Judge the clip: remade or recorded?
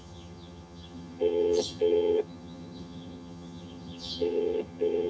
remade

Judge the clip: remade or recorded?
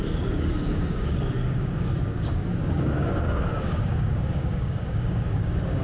remade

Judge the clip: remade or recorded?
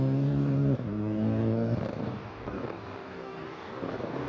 remade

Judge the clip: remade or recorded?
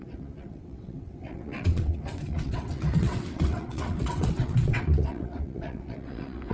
remade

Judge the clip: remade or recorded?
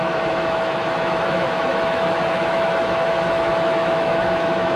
remade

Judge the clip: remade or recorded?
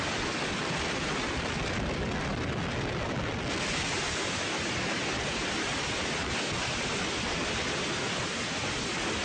recorded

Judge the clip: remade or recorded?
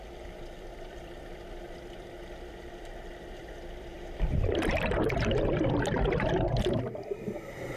remade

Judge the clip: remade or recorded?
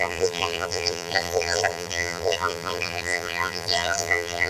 remade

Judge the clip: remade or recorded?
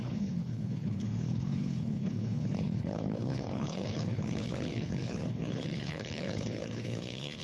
remade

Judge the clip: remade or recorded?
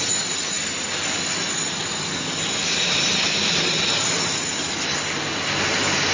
recorded